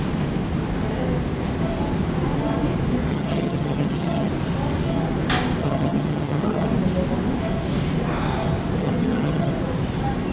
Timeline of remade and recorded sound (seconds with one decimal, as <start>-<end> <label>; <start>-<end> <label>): 0.0-3.1 recorded; 3.1-4.3 remade; 4.3-5.6 recorded; 5.6-6.7 remade; 6.7-8.8 recorded; 8.8-9.5 remade; 9.5-10.3 recorded